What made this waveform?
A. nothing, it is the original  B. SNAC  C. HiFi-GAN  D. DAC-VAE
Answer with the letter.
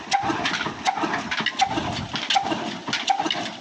A